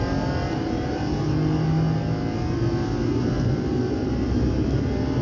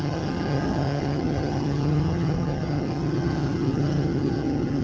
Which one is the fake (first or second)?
second